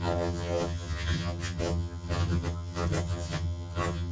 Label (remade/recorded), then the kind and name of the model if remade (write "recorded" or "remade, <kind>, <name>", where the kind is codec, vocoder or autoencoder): remade, vocoder, HiFi-GAN